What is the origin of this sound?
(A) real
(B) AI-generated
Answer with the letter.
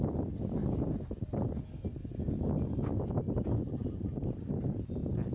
A